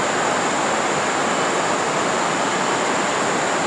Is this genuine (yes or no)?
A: yes